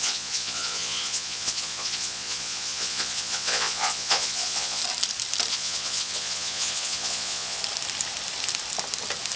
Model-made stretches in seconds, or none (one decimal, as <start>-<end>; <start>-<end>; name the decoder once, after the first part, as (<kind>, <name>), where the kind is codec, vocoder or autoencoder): 0.0-4.8 (vocoder, Vocos); 5.5-7.6